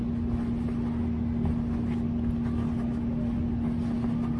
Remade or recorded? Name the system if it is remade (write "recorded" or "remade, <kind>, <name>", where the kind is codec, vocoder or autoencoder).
recorded